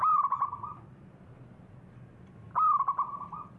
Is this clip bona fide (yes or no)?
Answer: yes